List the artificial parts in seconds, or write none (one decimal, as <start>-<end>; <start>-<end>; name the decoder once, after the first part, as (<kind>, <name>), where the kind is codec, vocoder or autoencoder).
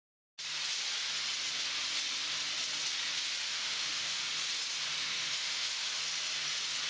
3.4-4.3 (autoencoder, DAC-VAE); 5.0-6.0